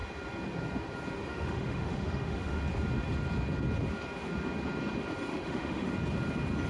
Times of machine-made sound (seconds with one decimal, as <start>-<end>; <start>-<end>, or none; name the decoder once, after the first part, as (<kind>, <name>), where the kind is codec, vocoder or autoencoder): 1.3-2.6 (autoencoder, DAC-VAE); 5.3-5.9